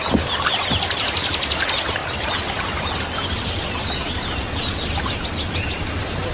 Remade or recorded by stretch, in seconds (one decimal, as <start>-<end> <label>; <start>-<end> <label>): 0.0-6.3 recorded